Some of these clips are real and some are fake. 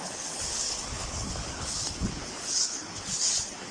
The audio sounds fake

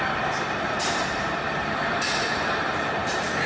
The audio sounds fake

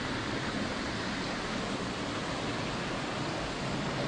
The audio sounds real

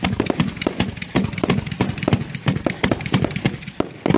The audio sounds real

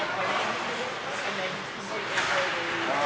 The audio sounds real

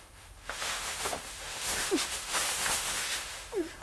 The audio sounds fake